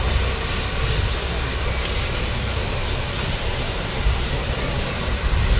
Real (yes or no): yes